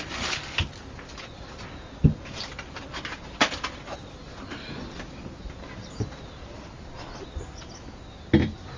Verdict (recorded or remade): recorded